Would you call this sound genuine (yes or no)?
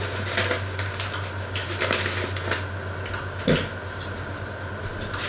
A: yes